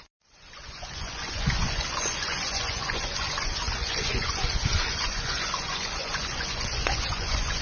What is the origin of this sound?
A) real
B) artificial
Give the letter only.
B